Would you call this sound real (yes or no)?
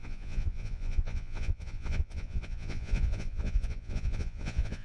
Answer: no